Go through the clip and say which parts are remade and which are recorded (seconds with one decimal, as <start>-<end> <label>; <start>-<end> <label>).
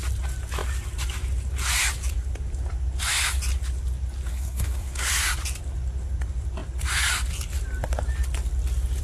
0.0-4.3 recorded; 4.3-5.1 remade; 5.1-9.0 recorded